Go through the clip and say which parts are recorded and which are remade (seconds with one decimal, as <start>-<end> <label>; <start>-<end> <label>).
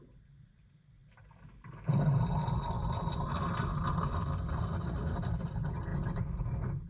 0.0-1.0 remade; 1.0-2.2 recorded; 2.2-5.9 remade; 5.9-6.4 recorded; 6.4-6.9 remade